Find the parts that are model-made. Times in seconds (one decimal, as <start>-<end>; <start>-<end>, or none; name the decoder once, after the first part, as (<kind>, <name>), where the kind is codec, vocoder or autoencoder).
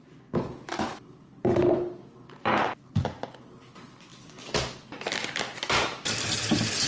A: none